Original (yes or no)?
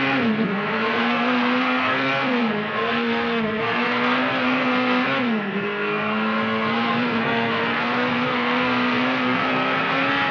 no